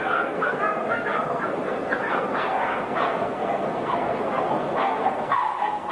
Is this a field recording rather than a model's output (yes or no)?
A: no